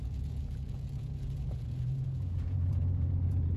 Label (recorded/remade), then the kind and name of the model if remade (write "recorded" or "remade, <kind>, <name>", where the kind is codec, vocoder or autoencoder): remade, vocoder, Vocos